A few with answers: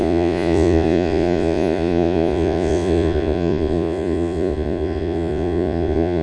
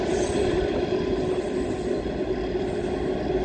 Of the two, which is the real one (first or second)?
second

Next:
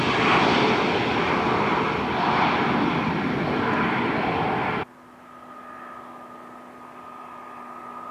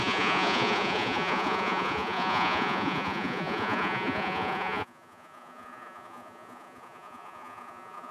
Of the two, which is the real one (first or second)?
first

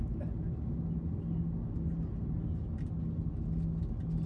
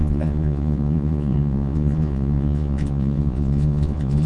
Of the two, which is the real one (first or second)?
first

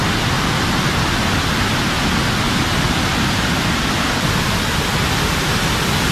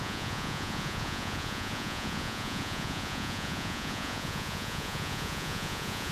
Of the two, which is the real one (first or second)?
first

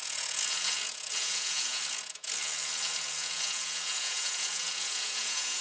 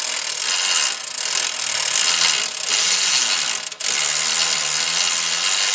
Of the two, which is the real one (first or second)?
second